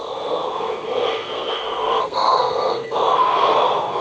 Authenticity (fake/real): fake